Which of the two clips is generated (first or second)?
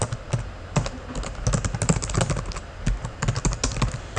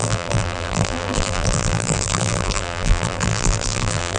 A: second